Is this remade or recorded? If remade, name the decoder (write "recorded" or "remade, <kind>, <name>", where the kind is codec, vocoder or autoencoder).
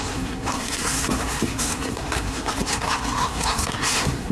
remade, codec, SNAC